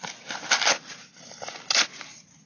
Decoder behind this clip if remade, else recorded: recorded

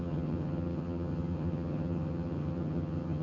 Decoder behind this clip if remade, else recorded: remade, vocoder, HiFi-GAN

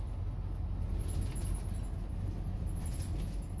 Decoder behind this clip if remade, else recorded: recorded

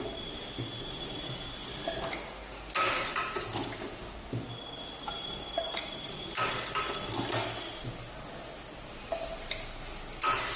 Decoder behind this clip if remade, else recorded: recorded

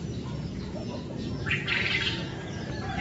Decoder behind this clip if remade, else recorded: recorded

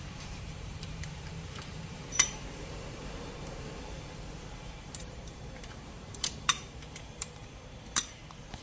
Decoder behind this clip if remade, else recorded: remade, vocoder, BigVGAN v2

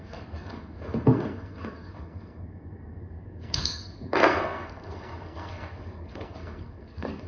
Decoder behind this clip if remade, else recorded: remade, codec, SNAC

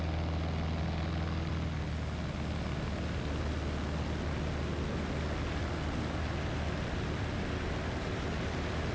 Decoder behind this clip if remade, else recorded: recorded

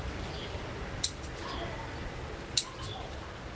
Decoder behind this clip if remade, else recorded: recorded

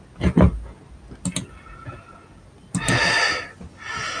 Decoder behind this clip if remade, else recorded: recorded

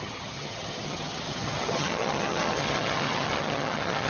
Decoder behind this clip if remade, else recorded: remade, vocoder, HiFi-GAN